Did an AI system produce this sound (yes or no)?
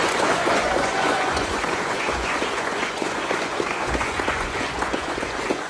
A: yes